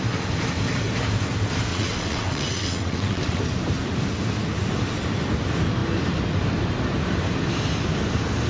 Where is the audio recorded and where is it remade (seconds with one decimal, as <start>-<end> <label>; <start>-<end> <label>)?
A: 0.0-1.7 recorded; 1.7-3.4 remade; 3.4-8.5 recorded